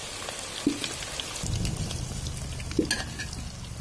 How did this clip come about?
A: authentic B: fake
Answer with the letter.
A